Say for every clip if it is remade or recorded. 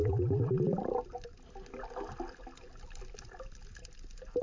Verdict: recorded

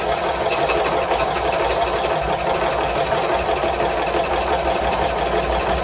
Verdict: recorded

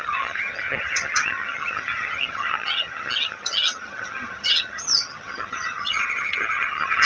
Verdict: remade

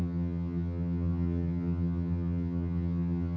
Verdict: remade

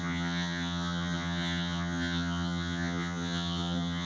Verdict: remade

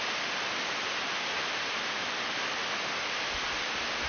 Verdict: recorded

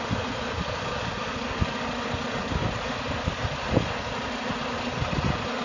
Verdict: recorded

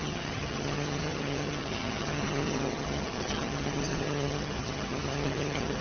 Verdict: remade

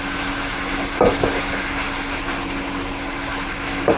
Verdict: recorded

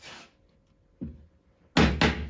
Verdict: recorded